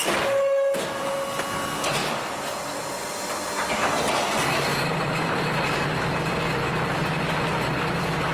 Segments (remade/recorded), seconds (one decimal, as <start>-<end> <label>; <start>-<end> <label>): 0.0-2.0 recorded; 2.0-3.5 remade; 3.5-4.7 recorded; 4.7-5.8 remade; 5.8-8.3 recorded